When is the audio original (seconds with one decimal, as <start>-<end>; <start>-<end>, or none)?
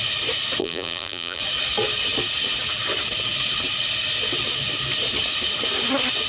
0.0-0.6; 1.4-6.3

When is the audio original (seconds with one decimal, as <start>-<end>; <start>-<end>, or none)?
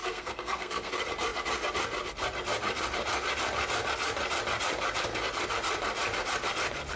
0.9-7.0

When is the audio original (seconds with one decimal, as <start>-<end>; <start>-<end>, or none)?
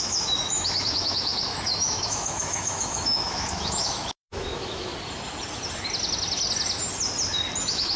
4.9-7.6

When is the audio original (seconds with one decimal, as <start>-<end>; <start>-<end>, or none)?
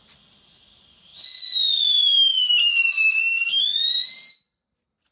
0.0-5.1